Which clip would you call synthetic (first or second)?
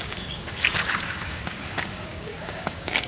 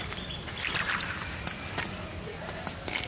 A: first